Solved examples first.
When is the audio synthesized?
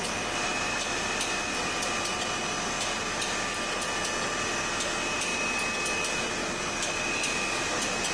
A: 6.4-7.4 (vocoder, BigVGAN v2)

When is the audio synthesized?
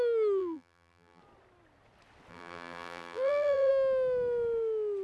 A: 0.4-1.2 (vocoder, BigVGAN v2); 2.3-3.7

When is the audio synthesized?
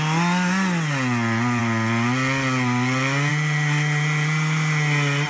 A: none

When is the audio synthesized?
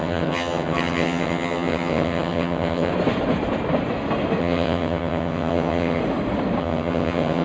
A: 0.0-2.9 (vocoder, HiFi-GAN); 4.4-6.0; 6.6-7.4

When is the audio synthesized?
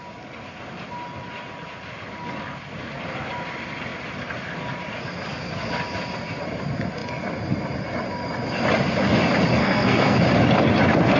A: 9.6-10.2 (codec, SNAC)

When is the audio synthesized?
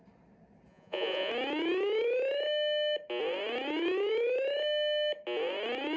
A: 0.7-1.3 (vocoder, Vocos)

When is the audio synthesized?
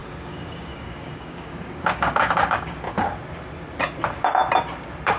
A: 0.0-3.1 (codec, DAC)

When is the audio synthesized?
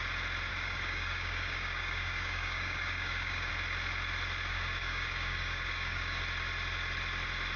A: 0.5-3.5 (codec, DAC); 4.5-6.2